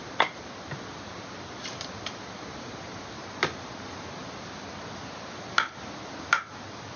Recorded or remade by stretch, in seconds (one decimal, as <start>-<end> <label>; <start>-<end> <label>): 0.0-7.0 recorded